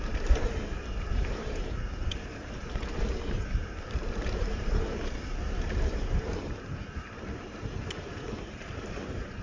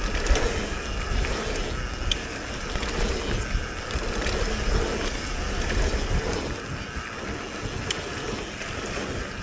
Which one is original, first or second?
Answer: second